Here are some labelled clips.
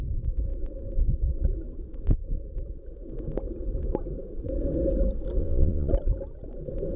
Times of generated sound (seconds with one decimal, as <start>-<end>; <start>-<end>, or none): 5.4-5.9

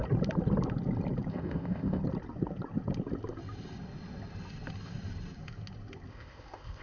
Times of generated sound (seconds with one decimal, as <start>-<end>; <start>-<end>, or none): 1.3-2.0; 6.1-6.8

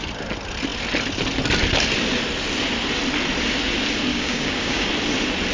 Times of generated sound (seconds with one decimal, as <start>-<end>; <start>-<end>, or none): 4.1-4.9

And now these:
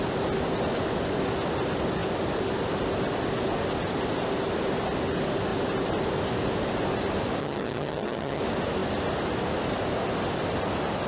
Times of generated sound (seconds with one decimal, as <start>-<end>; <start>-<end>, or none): 7.4-8.4

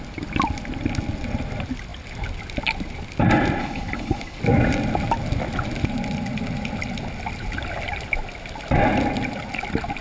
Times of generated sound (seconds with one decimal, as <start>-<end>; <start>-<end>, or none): 3.6-4.4

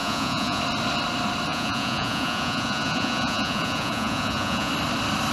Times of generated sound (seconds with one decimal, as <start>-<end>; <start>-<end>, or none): 0.0-0.6; 1.5-4.7

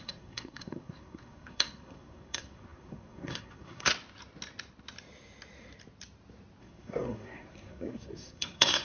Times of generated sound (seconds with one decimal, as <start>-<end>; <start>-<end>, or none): 0.0-3.9; 6.6-8.8

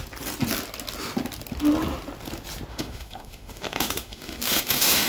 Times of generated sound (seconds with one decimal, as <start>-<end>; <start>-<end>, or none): 2.7-5.1